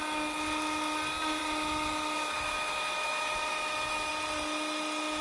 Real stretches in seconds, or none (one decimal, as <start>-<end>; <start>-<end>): 0.0-1.4; 4.1-5.2